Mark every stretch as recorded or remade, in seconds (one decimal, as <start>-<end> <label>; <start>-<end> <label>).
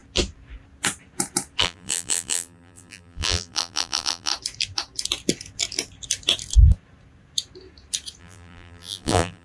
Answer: 0.0-1.6 recorded; 1.6-4.3 remade; 4.3-8.2 recorded; 8.2-9.4 remade